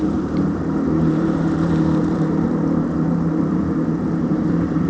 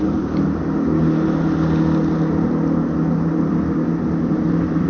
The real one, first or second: second